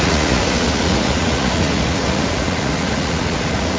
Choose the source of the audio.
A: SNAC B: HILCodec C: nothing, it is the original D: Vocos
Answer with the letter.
D